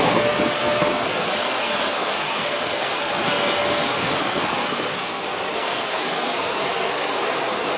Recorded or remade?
remade